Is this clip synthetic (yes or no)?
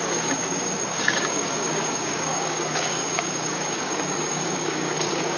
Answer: yes